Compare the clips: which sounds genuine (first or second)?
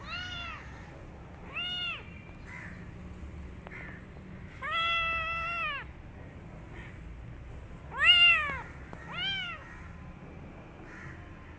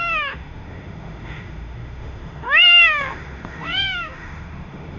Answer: first